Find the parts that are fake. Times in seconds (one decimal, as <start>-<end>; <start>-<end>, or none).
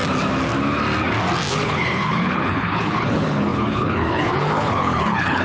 1.5-5.4